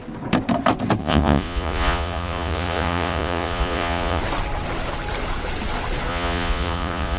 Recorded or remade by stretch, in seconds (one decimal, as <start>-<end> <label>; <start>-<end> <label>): 0.0-1.0 recorded; 1.0-4.2 remade; 4.2-6.1 recorded; 6.1-7.2 remade